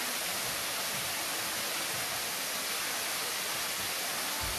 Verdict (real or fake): real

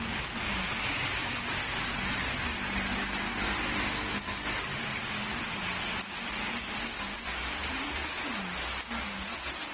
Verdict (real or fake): real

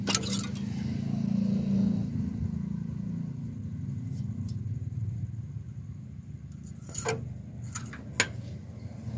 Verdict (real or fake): real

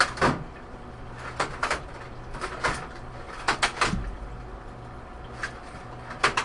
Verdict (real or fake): fake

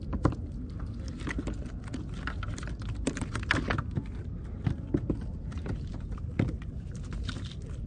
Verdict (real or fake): real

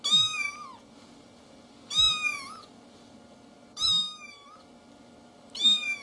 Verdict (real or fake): real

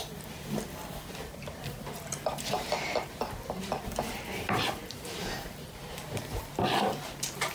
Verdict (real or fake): fake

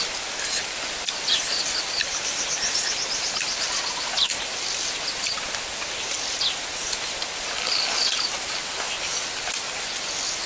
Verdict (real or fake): real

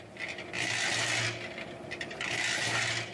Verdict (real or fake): real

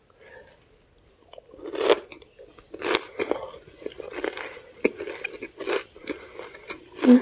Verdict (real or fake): real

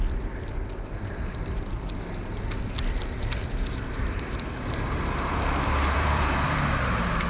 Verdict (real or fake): fake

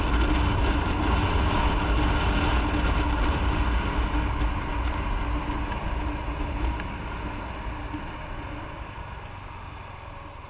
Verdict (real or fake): real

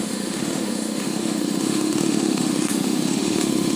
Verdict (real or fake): fake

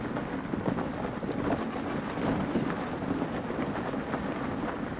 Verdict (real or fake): real